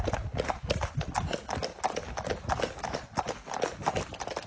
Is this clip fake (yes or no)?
no